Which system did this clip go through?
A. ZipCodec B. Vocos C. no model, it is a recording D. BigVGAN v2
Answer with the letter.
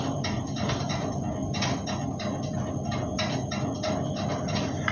C